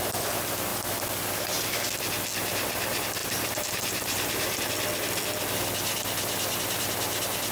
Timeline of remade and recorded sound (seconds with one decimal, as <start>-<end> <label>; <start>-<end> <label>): 0.0-3.2 recorded; 3.2-4.7 remade; 4.7-7.5 recorded